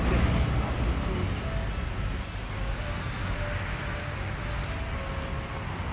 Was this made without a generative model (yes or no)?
yes